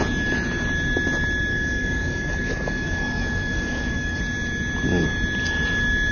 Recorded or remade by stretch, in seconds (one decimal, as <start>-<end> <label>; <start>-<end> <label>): 0.0-1.5 recorded; 1.5-4.2 remade; 4.2-6.1 recorded